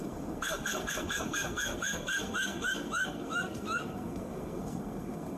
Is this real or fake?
fake